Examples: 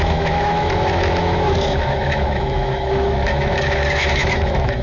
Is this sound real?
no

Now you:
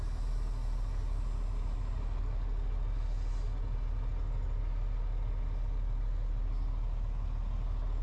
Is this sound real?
yes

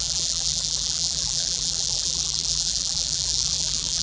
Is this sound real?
no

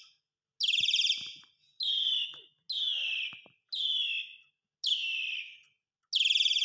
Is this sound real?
yes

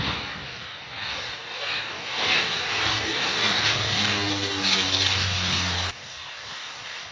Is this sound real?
no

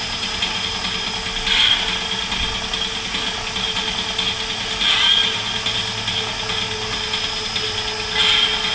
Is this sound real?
yes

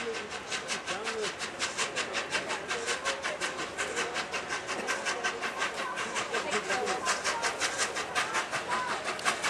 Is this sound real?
yes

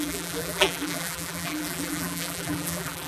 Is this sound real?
no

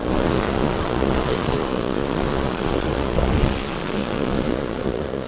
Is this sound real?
no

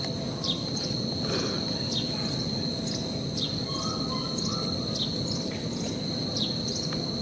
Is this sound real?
yes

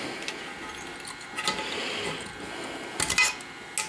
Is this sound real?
yes